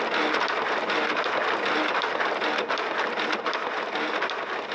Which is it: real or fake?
real